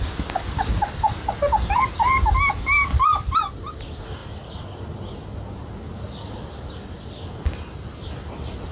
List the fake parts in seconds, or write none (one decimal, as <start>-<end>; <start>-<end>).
none